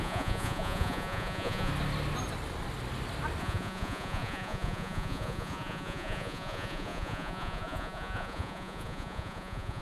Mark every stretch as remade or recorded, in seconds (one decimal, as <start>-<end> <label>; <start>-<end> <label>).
0.0-1.7 remade; 1.7-3.4 recorded; 3.4-9.8 remade